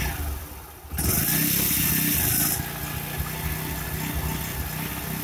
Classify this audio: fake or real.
real